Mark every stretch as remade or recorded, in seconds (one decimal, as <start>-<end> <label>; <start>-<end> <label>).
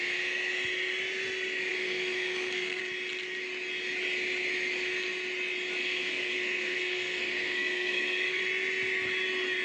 0.0-1.7 recorded; 1.7-2.8 remade; 2.8-5.8 recorded; 5.8-8.4 remade; 8.4-9.6 recorded